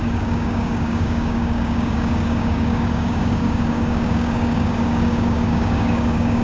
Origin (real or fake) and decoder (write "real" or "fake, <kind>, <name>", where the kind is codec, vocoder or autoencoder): fake, codec, DAC